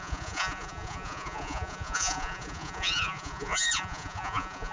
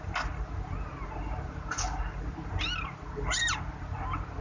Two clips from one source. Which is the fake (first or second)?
first